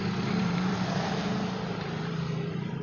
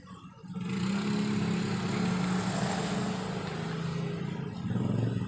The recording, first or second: second